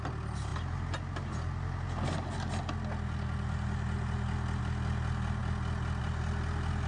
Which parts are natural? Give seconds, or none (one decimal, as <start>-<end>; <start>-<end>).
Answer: 0.0-6.9